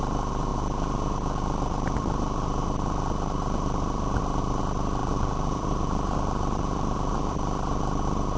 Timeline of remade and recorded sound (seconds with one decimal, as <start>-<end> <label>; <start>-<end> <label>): 0.0-5.0 recorded; 5.0-7.7 remade; 7.7-8.4 recorded